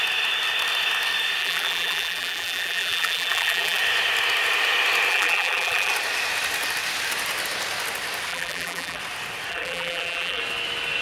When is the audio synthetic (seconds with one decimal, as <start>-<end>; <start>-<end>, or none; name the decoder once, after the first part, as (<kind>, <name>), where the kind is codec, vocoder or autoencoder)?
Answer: 1.4-3.8 (vocoder, BigVGAN v2); 5.1-5.9; 8.3-9.0; 9.5-10.4